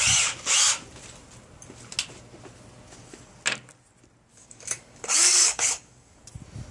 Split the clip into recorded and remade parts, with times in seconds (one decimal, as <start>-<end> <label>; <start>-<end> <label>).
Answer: 0.0-4.3 recorded; 4.3-6.2 remade; 6.2-6.7 recorded